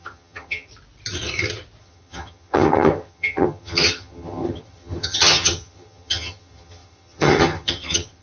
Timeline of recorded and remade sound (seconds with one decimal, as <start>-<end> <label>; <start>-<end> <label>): 0.0-0.7 remade; 0.7-1.8 recorded; 1.8-8.2 remade